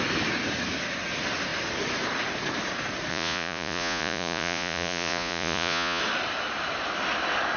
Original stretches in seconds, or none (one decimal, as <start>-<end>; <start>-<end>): 0.0-3.1; 6.0-7.6